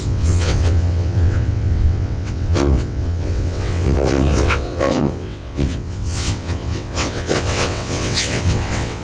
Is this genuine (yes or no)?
no